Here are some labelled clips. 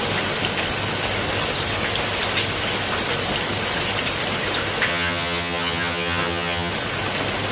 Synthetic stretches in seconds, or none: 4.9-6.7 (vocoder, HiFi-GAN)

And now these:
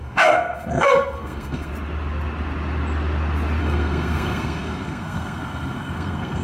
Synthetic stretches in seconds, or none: 0.0-1.7 (codec, SNAC); 3.6-6.4

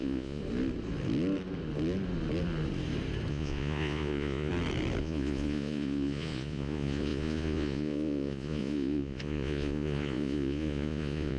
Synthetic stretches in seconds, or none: 0.0-0.4 (vocoder, Vocos); 3.3-4.5; 5.0-11.4

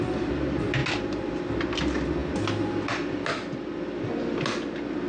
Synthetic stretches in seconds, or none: none

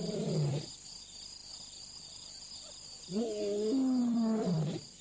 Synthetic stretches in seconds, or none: 0.0-1.4 (vocoder, BigVGAN v2); 4.0-5.0

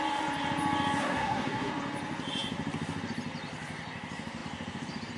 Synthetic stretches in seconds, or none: 1.0-1.7 (codec, SNAC)